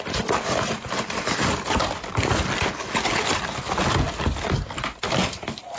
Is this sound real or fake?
real